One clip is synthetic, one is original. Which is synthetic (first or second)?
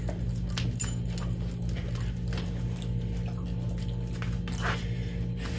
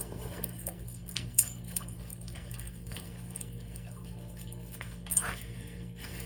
second